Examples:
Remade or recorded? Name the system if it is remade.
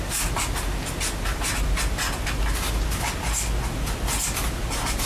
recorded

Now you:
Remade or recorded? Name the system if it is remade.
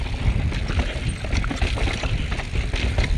recorded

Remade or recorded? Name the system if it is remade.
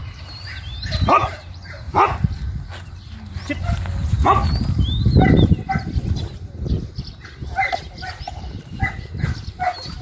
recorded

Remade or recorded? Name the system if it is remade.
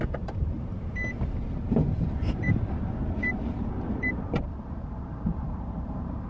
remade, vocoder, BigVGAN v2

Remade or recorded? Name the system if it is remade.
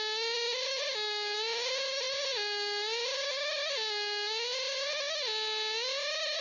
recorded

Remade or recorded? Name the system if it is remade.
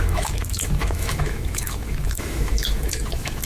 remade, autoencoder, DAC-VAE